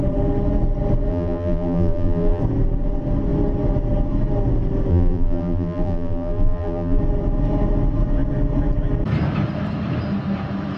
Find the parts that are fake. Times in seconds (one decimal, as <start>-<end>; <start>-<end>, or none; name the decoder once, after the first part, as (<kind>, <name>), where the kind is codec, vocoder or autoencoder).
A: 1.1-2.4 (vocoder, BigVGAN v2); 4.9-7.0